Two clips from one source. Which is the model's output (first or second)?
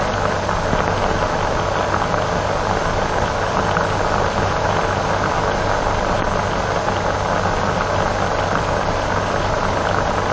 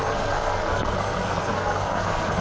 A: second